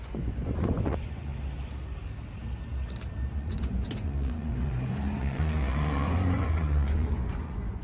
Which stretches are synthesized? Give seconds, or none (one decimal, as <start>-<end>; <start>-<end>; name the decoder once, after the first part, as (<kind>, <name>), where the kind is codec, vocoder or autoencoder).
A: 0.0-1.3 (vocoder, Vocos); 3.3-7.8